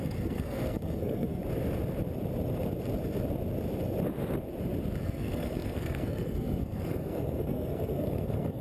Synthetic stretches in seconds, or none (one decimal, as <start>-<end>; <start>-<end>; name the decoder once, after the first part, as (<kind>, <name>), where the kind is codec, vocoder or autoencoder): 0.0-1.4 (codec, SNAC); 5.0-8.6